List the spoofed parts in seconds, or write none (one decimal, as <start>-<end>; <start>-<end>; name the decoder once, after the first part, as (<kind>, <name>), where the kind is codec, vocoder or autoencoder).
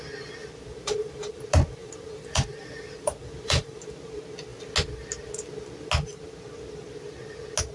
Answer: 0.4-1.4 (vocoder, BigVGAN v2); 1.8-3.9